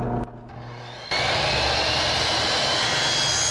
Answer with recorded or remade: recorded